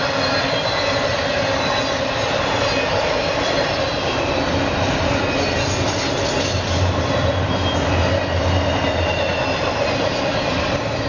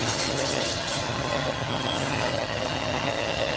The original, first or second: first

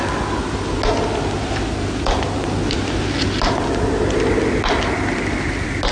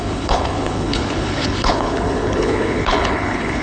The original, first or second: first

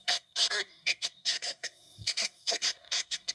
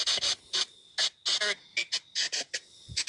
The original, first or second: second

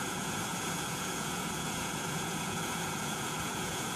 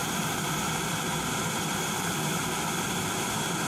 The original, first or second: second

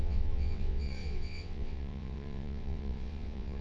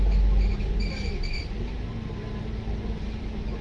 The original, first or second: second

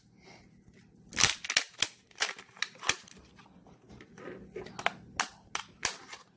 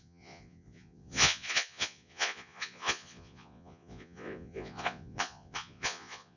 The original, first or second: first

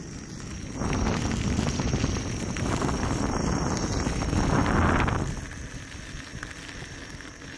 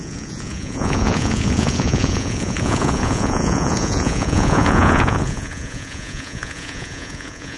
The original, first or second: first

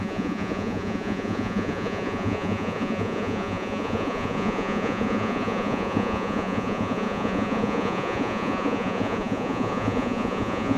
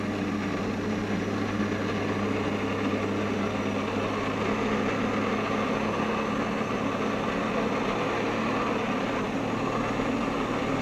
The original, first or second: second